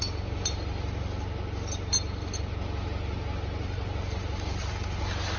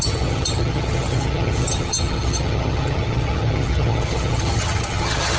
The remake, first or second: second